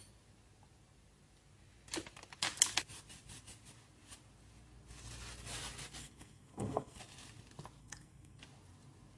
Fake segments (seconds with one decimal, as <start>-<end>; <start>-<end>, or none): 6.0-7.0; 7.8-8.4